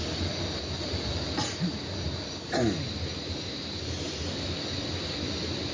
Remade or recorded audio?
recorded